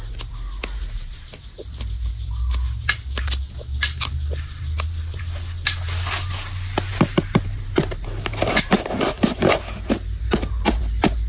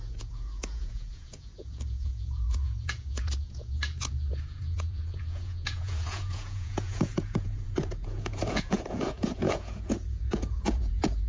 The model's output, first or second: second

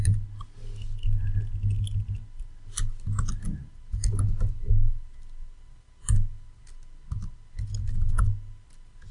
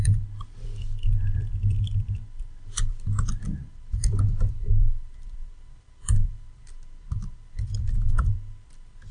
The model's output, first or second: second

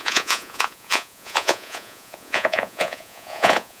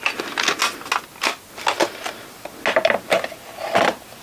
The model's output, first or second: first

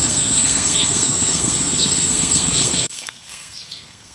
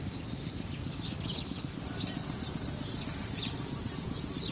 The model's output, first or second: first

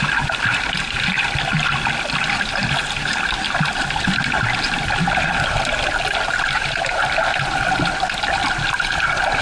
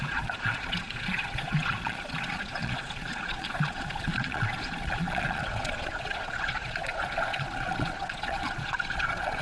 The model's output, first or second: second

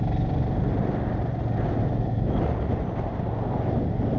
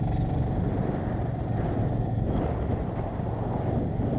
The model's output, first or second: second